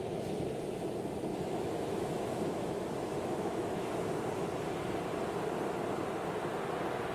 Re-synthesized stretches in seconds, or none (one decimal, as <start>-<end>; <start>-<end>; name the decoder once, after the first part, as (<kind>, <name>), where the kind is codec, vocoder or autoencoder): 1.3-3.9 (autoencoder, DAC-VAE)